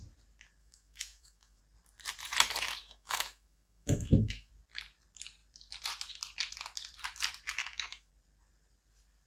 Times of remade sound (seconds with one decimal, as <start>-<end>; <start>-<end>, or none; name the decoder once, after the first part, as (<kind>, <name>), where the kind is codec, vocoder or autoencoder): 0.6-1.6 (autoencoder, DAC-VAE); 2.8-4.5; 7.6-8.1